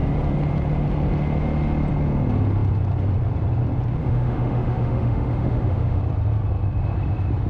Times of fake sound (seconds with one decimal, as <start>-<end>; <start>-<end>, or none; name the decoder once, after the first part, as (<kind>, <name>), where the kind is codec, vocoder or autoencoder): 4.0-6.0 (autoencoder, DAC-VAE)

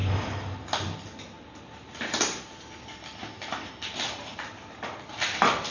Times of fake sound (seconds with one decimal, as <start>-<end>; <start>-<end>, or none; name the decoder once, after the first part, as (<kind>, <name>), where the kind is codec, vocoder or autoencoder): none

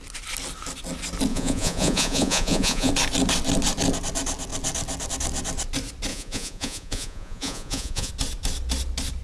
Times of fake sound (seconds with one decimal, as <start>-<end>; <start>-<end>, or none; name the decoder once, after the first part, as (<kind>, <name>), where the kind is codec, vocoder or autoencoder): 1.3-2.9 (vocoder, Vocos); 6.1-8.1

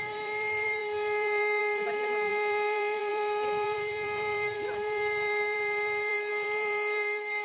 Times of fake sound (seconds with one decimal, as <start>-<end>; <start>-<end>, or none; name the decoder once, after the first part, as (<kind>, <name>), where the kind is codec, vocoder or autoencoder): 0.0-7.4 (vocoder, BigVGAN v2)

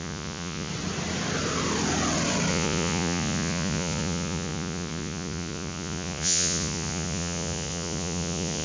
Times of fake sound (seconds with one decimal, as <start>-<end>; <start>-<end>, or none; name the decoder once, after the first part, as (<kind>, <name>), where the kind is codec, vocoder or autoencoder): 0.0-0.7 (vocoder, Vocos); 2.5-8.6